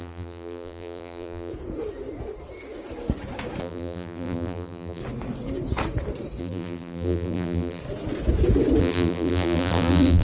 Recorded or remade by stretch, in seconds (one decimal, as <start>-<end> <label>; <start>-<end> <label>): 0.0-1.5 remade; 1.5-3.6 recorded; 3.6-5.0 remade; 5.0-6.4 recorded; 6.4-7.8 remade; 7.8-8.8 recorded; 8.8-10.2 remade